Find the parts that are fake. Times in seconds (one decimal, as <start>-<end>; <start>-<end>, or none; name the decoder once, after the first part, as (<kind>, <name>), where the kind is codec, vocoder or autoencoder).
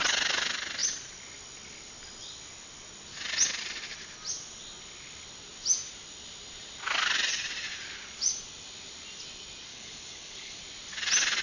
9.7-10.6 (codec, HILCodec)